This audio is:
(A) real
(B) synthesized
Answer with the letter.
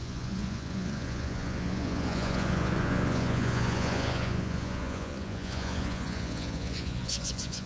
B